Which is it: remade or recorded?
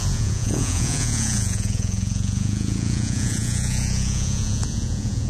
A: remade